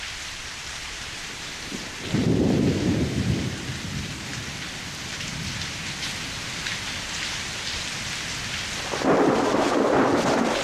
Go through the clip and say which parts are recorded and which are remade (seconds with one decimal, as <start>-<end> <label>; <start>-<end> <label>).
0.0-0.4 recorded; 0.4-3.4 remade; 3.4-10.6 recorded